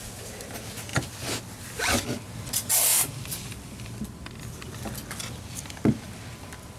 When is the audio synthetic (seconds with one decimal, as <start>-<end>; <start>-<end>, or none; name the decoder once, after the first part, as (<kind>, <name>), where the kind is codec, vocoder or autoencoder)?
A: 2.9-4.4 (vocoder, BigVGAN v2)